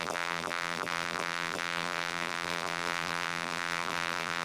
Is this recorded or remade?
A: remade